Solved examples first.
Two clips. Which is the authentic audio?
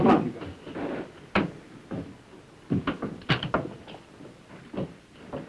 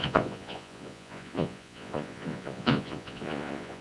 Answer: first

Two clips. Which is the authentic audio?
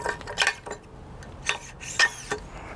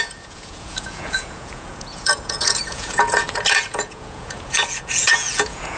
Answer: first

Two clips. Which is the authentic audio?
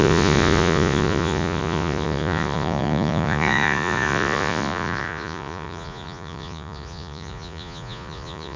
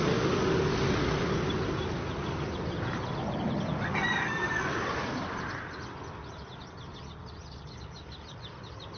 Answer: second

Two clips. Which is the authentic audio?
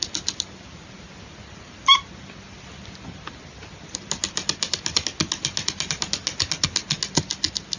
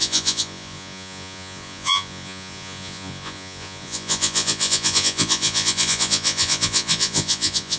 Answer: first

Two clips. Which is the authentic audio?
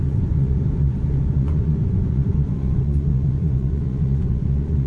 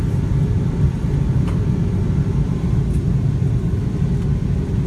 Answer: second